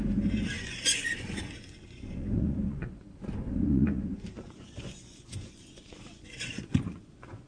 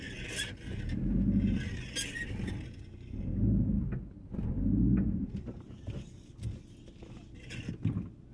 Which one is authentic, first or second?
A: second